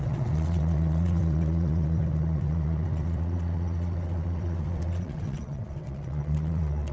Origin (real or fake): fake